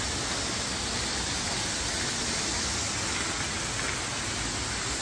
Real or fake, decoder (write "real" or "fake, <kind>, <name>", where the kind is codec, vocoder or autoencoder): real